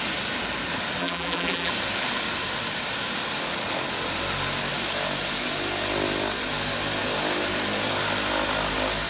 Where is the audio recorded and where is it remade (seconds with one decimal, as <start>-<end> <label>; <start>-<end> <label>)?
0.0-1.0 recorded; 1.0-1.7 remade; 1.7-9.1 recorded